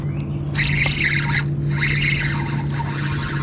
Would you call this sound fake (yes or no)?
no